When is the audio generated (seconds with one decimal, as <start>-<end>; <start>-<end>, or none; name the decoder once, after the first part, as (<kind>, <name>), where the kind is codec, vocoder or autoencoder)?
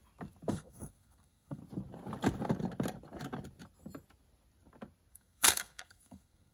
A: 0.5-1.6 (codec, SNAC); 5.1-6.5